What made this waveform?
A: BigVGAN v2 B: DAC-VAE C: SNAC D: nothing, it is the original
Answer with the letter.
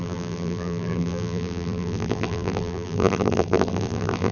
A